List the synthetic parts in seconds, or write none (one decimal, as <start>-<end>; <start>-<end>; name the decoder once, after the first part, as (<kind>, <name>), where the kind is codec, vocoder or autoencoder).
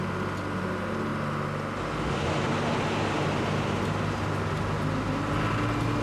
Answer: none